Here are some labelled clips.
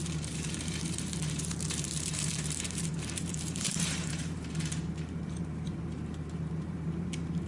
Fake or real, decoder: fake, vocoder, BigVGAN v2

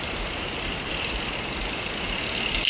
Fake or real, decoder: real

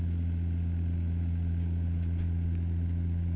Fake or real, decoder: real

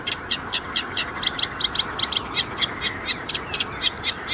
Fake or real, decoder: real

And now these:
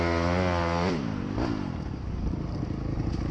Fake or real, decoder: real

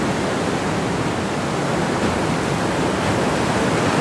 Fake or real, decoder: real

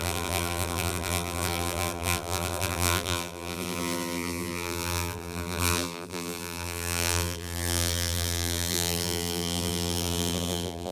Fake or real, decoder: fake, vocoder, BigVGAN v2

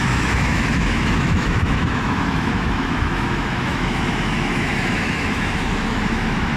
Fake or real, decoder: fake, autoencoder, DAC-VAE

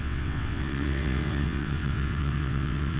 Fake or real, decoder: fake, vocoder, WaveNeXt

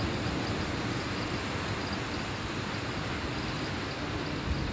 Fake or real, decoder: real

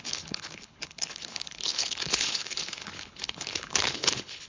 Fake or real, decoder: fake, codec, HILCodec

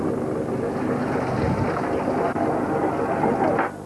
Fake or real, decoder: real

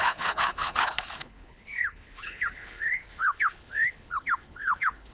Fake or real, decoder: fake, codec, HILCodec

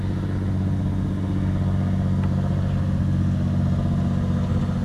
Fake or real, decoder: real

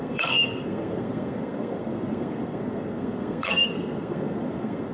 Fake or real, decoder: fake, codec, SNAC